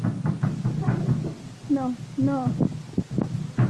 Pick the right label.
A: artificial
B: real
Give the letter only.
B